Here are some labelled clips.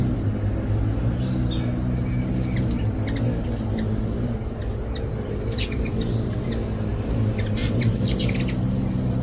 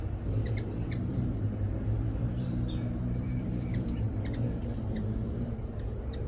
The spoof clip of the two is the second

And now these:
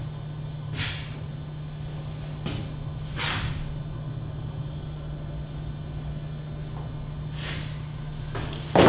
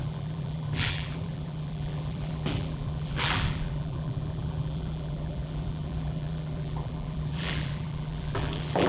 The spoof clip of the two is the second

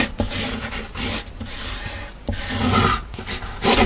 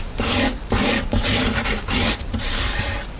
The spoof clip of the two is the second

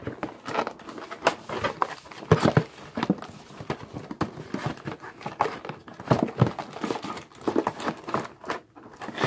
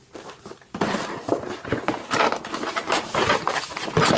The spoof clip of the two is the second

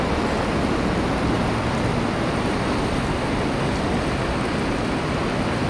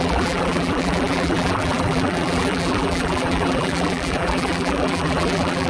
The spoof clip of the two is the second